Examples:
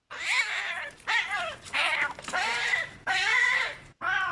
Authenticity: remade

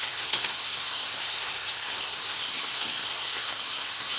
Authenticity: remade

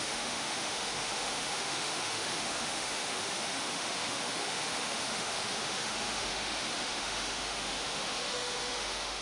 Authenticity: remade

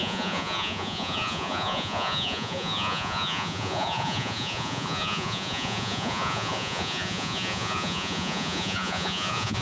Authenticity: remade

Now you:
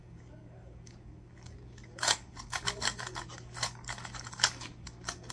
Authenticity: remade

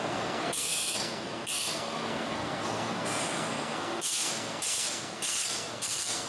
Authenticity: remade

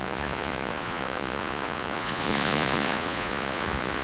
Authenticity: remade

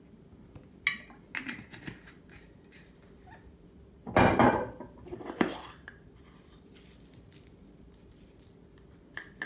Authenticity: recorded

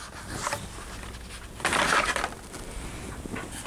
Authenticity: recorded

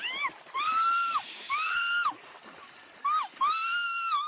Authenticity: recorded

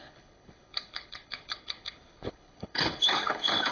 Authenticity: remade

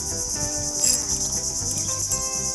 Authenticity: recorded